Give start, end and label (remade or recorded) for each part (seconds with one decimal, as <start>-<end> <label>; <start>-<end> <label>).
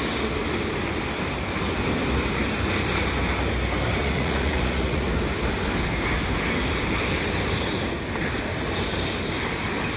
0.0-4.0 recorded; 4.0-5.0 remade; 5.0-10.0 recorded